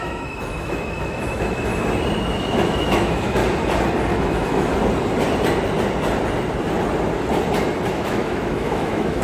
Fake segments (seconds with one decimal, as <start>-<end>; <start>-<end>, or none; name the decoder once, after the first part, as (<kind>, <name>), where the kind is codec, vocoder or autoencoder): 0.0-1.7 (autoencoder, DAC-VAE); 2.4-3.4; 4.1-4.7; 7.9-9.2